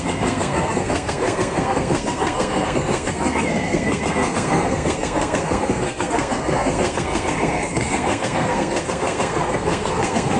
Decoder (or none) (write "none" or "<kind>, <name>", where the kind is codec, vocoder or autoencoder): codec, SNAC